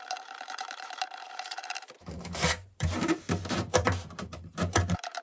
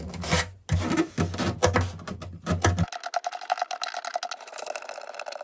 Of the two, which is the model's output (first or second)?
first